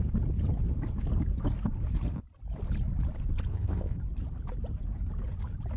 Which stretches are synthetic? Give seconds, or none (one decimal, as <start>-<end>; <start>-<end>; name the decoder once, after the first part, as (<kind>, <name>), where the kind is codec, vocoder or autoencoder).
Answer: 3.5-4.0 (codec, ZipCodec)